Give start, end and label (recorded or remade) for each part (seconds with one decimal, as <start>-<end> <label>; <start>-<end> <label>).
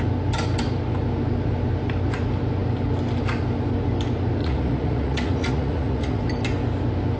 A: 0.0-4.4 recorded; 4.4-6.2 remade; 6.2-7.2 recorded